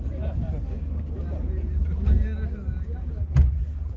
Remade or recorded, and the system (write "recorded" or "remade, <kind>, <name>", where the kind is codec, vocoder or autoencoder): recorded